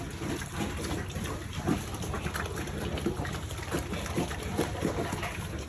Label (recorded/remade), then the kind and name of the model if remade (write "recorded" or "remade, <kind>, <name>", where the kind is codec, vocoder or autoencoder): recorded